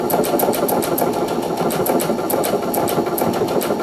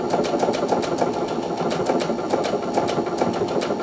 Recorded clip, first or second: second